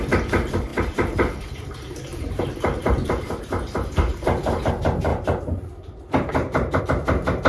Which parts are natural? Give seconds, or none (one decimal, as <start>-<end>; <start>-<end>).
0.0-0.7; 3.2-5.1; 6.8-7.5